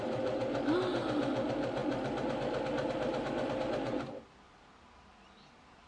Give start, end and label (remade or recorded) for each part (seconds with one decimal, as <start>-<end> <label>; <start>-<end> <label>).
0.0-5.9 recorded